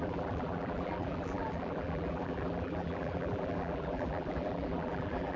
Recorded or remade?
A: remade